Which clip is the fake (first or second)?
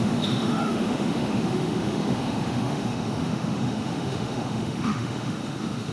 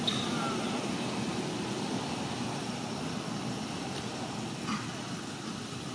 first